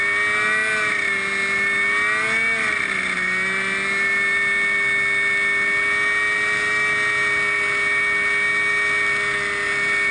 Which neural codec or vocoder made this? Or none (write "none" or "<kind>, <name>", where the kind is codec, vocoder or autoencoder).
none